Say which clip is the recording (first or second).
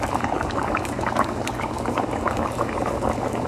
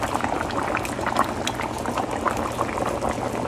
second